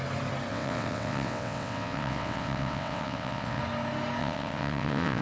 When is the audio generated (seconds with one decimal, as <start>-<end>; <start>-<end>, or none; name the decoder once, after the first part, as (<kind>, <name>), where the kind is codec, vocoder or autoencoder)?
0.5-3.6 (vocoder, WaveNeXt); 4.2-5.2